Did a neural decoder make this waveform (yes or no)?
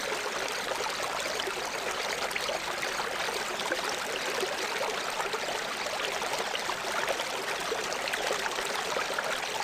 no